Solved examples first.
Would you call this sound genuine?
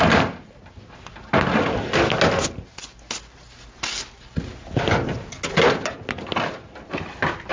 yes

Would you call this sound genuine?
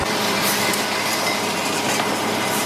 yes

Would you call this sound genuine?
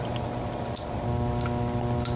yes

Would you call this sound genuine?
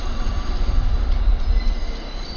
yes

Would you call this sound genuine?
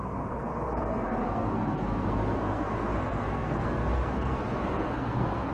no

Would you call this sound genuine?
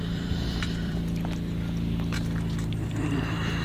no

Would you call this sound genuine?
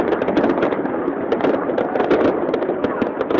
yes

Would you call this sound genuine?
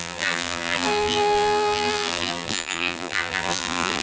no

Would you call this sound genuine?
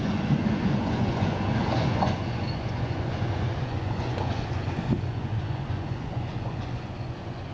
no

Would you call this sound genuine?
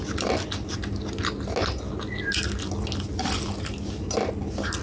yes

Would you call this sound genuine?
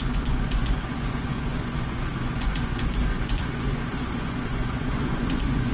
no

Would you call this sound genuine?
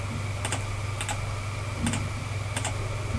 yes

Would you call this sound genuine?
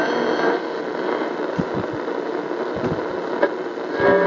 yes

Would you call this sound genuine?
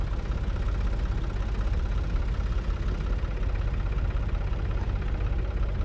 yes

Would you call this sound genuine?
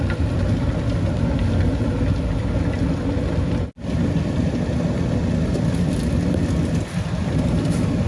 yes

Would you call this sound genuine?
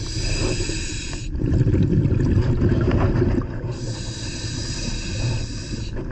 yes